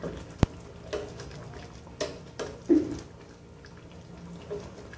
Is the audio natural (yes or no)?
yes